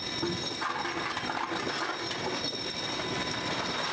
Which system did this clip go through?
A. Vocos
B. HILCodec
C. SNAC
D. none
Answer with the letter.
D